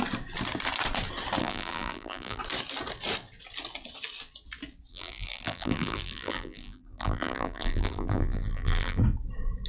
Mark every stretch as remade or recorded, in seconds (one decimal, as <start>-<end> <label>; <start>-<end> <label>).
0.0-1.4 recorded; 1.4-2.4 remade; 2.4-4.9 recorded; 4.9-9.0 remade; 9.0-9.7 recorded